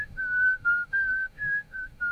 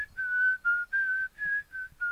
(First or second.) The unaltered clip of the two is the second